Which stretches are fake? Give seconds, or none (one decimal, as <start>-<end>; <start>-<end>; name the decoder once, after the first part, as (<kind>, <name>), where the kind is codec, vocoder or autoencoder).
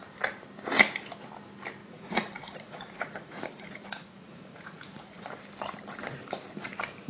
1.8-5.4 (vocoder, Vocos)